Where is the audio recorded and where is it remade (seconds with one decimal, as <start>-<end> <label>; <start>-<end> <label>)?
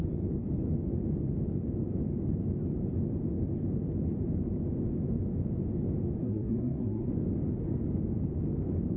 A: 0.0-6.2 recorded; 6.2-7.1 remade; 7.1-9.0 recorded